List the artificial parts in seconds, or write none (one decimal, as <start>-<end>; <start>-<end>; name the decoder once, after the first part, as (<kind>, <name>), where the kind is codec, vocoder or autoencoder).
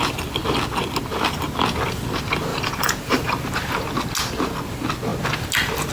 2.5-4.1 (vocoder, BigVGAN v2)